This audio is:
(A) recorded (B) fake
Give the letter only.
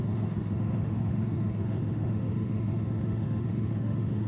B